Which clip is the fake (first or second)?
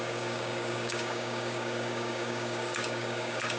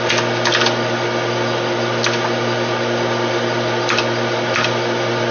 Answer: first